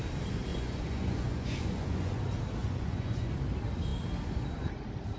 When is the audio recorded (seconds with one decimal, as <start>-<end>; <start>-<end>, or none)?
0.0-0.5; 2.2-2.6; 3.3-5.2

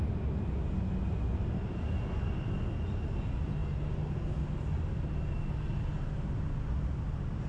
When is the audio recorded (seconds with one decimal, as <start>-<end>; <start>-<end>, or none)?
0.0-7.5

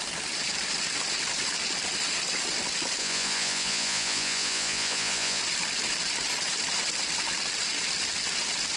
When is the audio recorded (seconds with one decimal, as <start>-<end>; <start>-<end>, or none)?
0.0-3.0; 5.4-8.8

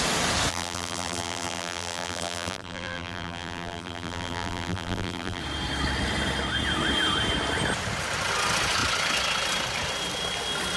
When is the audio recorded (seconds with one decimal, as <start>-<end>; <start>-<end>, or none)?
0.0-0.5; 5.4-10.8

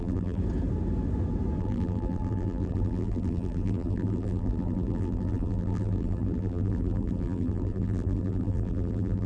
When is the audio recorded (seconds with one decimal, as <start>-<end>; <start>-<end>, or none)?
0.4-1.6

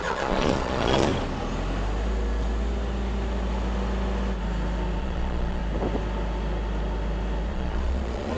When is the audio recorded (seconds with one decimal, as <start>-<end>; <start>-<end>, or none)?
1.1-5.0; 5.6-7.5

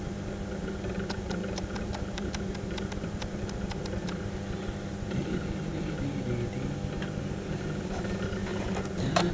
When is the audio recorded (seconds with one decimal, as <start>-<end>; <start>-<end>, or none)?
0.0-1.4; 6.2-8.5